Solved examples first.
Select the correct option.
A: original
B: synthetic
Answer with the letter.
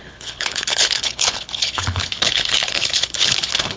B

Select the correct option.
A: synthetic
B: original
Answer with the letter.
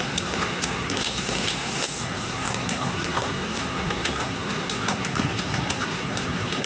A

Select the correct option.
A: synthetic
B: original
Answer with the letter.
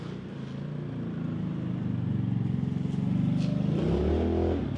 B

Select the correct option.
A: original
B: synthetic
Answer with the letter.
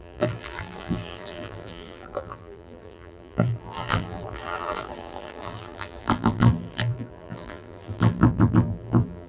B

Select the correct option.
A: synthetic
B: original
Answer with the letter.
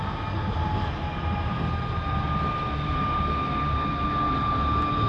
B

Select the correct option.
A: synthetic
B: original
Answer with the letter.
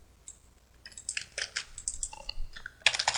B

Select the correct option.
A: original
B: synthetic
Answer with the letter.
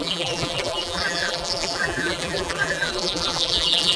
B